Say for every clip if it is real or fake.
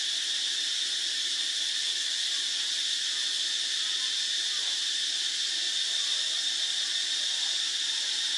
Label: real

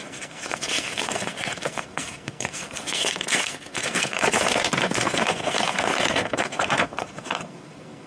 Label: fake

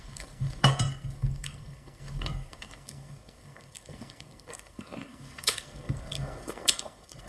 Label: fake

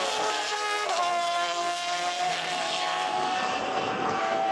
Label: fake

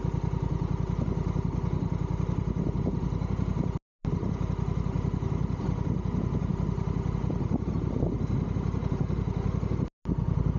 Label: real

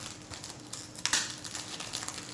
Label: real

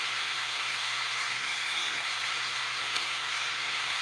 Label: fake